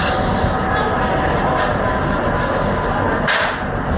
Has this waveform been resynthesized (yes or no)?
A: no